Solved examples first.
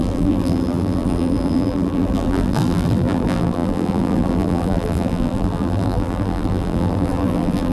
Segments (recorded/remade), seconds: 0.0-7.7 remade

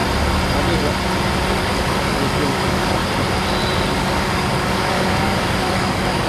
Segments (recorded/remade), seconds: 0.0-1.6 recorded; 1.6-3.0 remade; 3.0-4.0 recorded; 4.0-6.3 remade

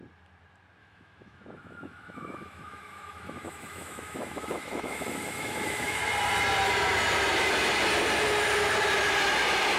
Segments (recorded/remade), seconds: 0.0-0.8 recorded; 0.8-6.0 remade; 6.0-9.8 recorded

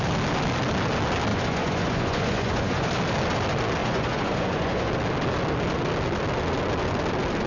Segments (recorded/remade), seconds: 0.0-1.3 recorded; 1.3-2.9 remade; 2.9-3.8 recorded; 3.8-4.9 remade; 4.9-7.5 recorded

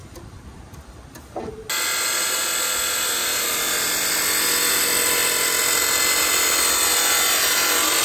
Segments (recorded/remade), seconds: 0.0-1.5 remade; 1.5-8.0 recorded

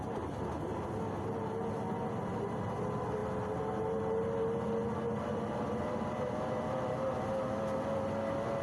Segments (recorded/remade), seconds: 0.0-8.6 recorded